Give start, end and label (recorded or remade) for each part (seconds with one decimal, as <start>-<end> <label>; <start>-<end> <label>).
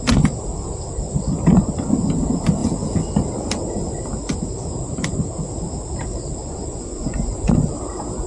0.0-6.4 recorded; 6.4-7.7 remade; 7.7-8.3 recorded